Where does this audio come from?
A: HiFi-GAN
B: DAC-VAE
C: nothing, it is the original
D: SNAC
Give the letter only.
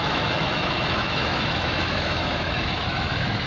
B